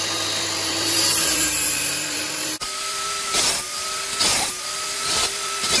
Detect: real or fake fake